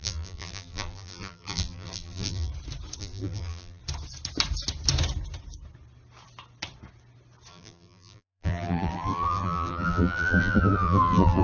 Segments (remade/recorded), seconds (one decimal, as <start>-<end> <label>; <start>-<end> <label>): 0.0-2.5 remade; 2.5-3.0 recorded; 3.0-3.8 remade; 3.8-7.5 recorded; 7.5-11.4 remade